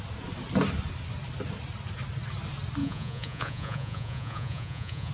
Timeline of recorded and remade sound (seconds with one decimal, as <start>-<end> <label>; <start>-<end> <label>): 0.0-2.8 recorded; 2.8-5.1 remade